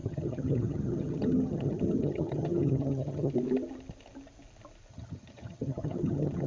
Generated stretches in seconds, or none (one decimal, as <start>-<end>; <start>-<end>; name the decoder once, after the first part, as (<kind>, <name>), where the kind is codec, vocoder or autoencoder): 0.0-3.3 (vocoder, HiFi-GAN); 4.9-6.5